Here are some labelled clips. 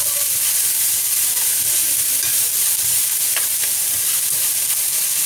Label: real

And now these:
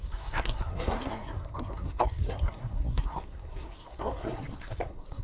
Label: fake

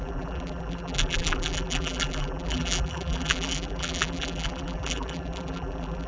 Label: fake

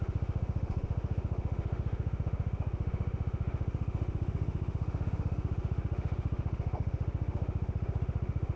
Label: fake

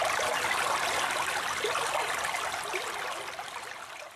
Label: real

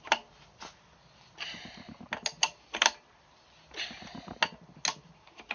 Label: real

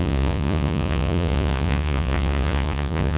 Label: fake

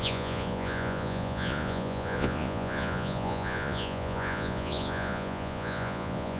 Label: fake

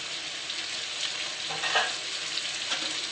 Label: real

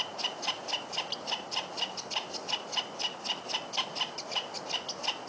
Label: real